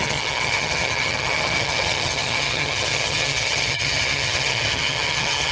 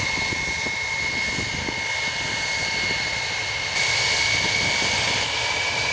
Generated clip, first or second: first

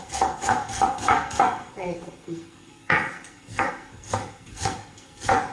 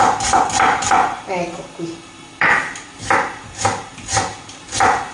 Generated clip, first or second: first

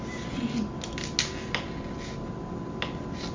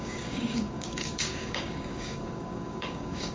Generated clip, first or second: second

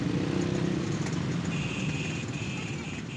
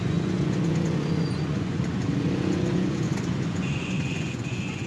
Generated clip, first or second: second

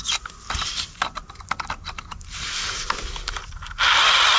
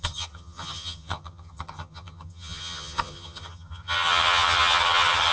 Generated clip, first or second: second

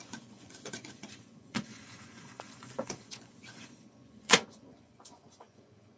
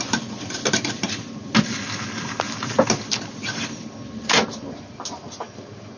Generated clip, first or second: first